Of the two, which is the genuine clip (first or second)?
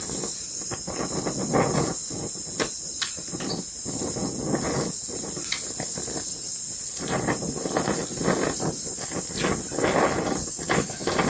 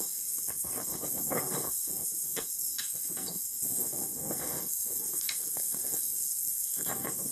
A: first